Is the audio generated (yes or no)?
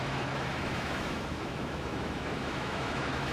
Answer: yes